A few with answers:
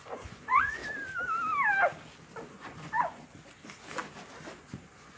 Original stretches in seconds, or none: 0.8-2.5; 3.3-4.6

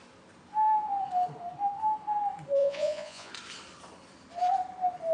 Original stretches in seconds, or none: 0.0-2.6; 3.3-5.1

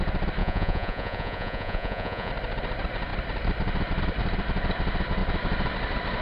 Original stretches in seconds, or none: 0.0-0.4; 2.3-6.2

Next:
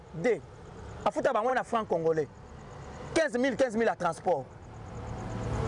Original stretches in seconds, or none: 0.0-5.7